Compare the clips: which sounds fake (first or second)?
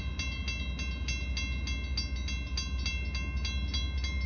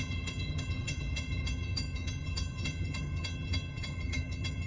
second